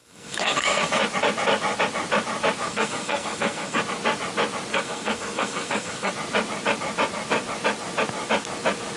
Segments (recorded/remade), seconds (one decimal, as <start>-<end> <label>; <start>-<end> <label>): 0.0-1.0 remade; 1.0-2.6 recorded; 2.6-3.8 remade; 3.8-4.7 recorded; 4.7-6.1 remade; 6.1-9.0 recorded